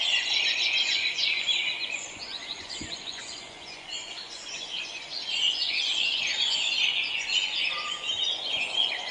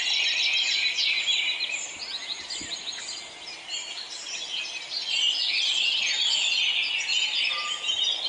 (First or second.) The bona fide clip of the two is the second